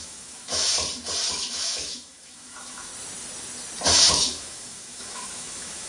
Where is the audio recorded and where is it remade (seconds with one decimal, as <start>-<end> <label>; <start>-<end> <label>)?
0.0-0.7 remade; 0.7-1.3 recorded; 1.3-2.9 remade; 2.9-4.1 recorded; 4.1-5.9 remade